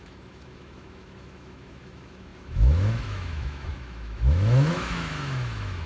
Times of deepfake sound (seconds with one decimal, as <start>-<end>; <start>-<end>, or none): 0.0-5.9